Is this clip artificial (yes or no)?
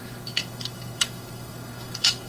yes